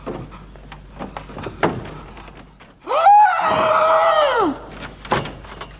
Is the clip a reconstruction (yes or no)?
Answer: no